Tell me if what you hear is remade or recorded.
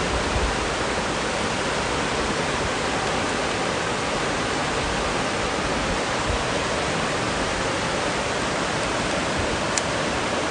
recorded